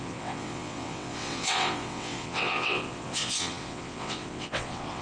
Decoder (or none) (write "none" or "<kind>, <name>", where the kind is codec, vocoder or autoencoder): vocoder, WaveNeXt